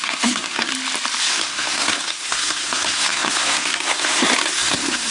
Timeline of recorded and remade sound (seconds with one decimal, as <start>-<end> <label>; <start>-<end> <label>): 0.0-0.7 remade; 0.7-1.2 recorded; 1.2-5.1 remade